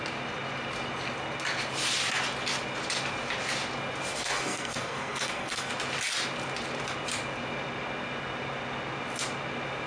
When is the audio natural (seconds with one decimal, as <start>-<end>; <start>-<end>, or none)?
0.0-4.1; 5.7-9.9